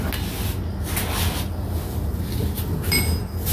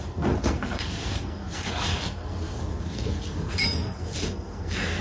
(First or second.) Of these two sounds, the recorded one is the first